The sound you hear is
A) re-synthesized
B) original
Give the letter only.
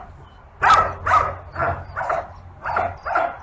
B